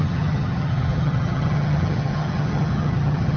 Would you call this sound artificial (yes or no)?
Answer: yes